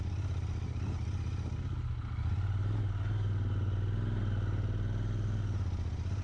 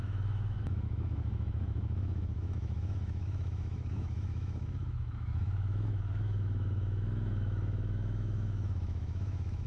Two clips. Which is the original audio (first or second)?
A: first